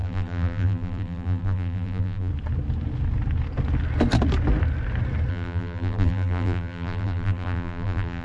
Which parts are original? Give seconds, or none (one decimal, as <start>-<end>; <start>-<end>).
2.3-5.3